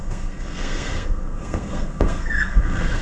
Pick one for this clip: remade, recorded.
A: remade